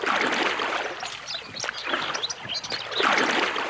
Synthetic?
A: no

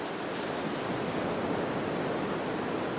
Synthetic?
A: no